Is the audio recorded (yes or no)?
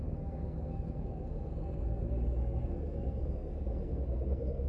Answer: no